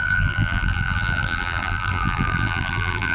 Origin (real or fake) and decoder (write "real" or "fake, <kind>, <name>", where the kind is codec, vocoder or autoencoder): fake, vocoder, BigVGAN v2